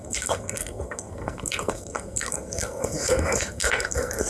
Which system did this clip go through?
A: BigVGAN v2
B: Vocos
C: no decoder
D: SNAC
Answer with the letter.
D